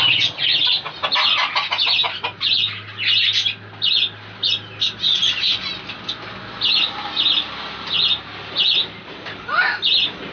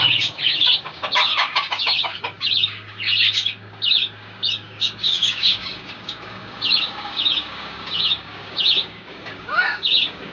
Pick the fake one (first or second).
second